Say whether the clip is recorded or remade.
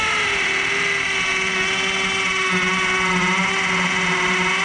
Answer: recorded